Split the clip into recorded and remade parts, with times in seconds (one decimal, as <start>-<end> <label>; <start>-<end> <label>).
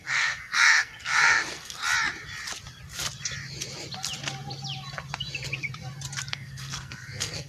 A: 0.0-1.8 remade; 1.8-6.3 recorded; 6.3-7.5 remade